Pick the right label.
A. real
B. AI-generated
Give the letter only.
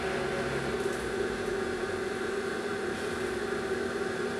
A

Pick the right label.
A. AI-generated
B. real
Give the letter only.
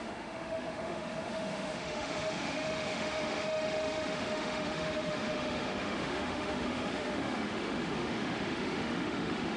A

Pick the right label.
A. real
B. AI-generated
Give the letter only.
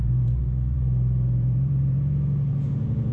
B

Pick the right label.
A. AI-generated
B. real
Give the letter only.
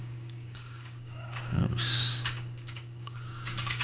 A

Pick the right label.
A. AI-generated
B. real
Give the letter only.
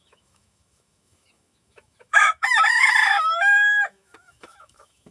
A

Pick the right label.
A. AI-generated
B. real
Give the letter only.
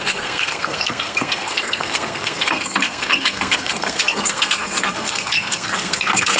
A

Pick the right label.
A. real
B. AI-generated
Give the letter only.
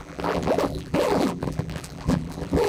B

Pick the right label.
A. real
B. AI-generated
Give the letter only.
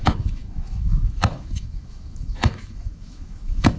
B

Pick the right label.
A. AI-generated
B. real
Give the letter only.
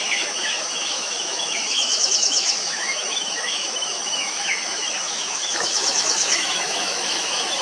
A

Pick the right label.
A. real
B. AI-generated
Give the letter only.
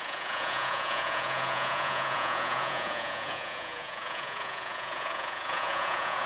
B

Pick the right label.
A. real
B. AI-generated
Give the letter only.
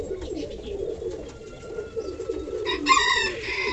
A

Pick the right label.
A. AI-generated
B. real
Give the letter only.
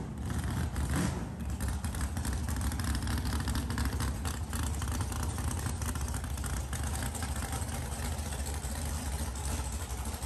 B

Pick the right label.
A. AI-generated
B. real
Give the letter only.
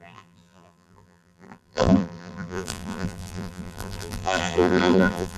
A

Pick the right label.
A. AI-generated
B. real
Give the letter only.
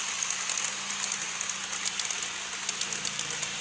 B